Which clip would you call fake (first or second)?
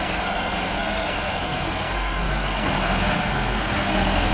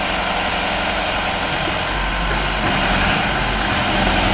first